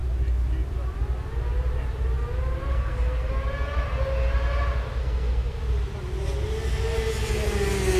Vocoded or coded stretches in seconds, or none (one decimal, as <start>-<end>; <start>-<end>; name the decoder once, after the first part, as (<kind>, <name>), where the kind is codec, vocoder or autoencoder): 2.7-3.3 (codec, SNAC); 5.0-5.6